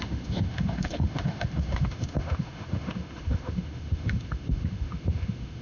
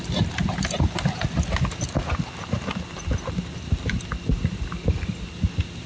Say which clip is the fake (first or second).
first